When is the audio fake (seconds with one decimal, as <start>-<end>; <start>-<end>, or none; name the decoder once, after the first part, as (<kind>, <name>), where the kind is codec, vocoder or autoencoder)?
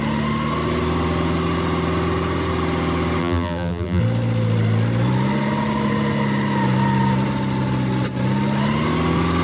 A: 3.2-4.0 (vocoder, BigVGAN v2)